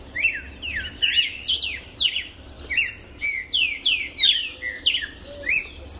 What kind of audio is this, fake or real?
real